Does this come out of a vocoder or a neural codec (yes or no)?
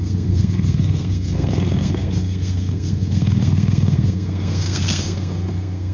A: yes